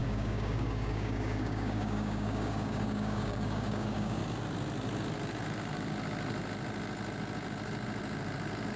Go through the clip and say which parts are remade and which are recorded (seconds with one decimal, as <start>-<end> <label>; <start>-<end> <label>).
0.0-4.2 remade; 4.2-8.8 recorded